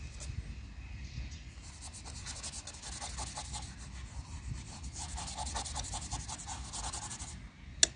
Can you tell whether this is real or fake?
real